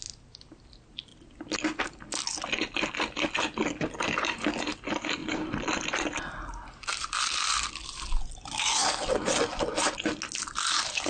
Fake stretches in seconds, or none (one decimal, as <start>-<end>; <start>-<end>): 5.2-6.4